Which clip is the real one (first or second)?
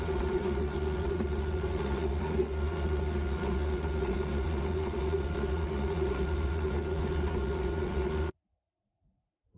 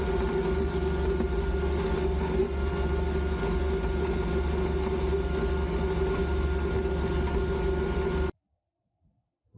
second